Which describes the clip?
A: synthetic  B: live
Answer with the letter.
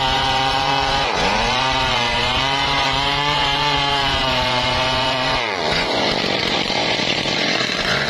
A